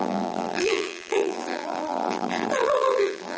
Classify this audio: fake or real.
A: fake